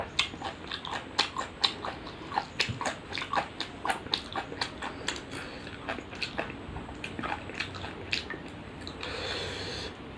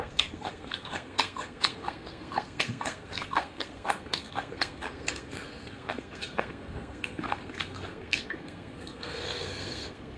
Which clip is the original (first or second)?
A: first